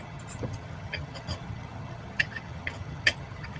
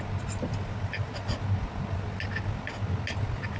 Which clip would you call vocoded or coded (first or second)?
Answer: first